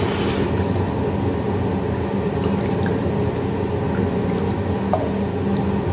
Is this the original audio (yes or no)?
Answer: yes